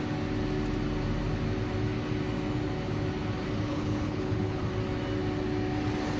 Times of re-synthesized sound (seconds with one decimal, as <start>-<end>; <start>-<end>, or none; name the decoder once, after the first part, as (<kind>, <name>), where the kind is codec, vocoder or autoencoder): 3.7-4.6 (codec, HILCodec)